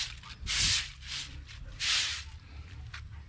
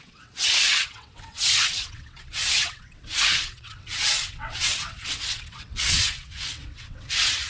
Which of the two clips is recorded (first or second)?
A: first